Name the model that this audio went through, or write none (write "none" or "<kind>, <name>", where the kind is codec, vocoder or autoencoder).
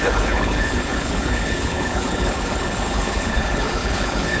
codec, HILCodec